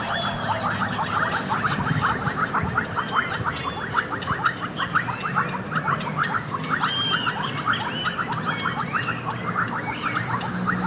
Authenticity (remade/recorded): remade